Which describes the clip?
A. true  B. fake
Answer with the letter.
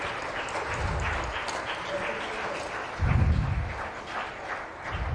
A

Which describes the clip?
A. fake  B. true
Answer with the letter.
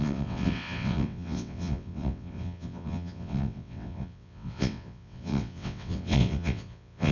A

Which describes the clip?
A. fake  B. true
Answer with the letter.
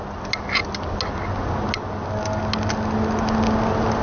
B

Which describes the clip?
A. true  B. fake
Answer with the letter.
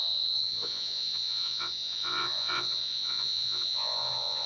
B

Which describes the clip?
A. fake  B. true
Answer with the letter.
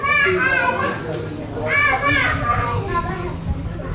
B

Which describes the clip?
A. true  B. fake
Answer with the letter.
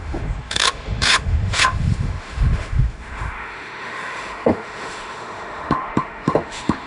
B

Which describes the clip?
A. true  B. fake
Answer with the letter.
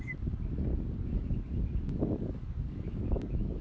B